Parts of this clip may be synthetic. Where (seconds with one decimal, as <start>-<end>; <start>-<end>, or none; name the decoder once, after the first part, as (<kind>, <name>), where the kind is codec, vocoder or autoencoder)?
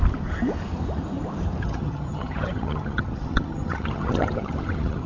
1.6-5.1 (vocoder, HiFi-GAN)